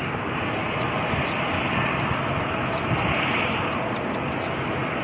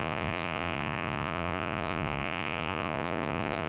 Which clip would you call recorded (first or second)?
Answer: first